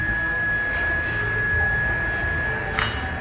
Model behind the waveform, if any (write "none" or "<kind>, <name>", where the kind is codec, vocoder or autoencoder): none